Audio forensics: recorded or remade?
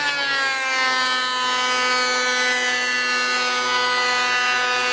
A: recorded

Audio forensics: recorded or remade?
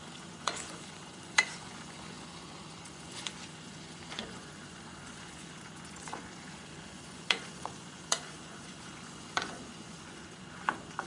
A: remade